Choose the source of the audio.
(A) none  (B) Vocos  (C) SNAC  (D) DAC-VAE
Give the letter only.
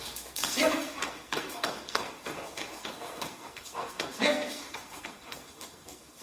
C